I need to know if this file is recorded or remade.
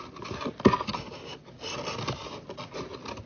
recorded